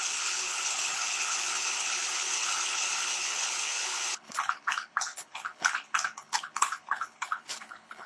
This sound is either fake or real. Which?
fake